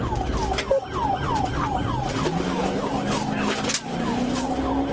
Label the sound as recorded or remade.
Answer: recorded